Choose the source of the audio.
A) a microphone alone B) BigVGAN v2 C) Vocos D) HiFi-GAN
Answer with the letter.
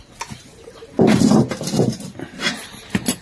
A